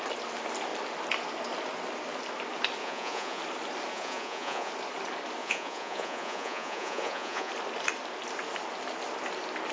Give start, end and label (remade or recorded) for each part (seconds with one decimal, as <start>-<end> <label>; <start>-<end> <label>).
0.0-2.8 recorded; 2.8-3.4 remade; 3.4-3.9 recorded; 3.9-4.7 remade; 4.7-5.4 recorded; 5.4-7.5 remade; 7.5-9.7 recorded